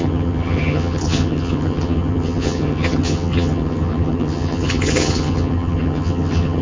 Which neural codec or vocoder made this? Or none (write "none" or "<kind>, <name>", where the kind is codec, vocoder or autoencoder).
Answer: vocoder, HiFi-GAN